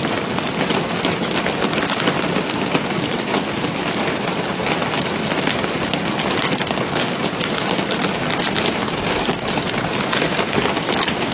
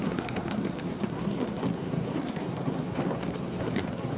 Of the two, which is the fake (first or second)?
second